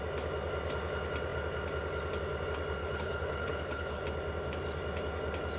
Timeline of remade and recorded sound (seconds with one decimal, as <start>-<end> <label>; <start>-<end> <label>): 0.0-2.8 recorded; 2.8-4.0 remade; 4.0-5.6 recorded